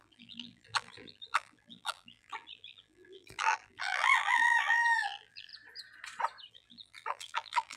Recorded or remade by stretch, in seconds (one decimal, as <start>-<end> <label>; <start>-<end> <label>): 0.0-5.5 remade; 5.5-6.5 recorded; 6.5-7.8 remade